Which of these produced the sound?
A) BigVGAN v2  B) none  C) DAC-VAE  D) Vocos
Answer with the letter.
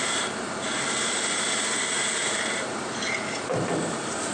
A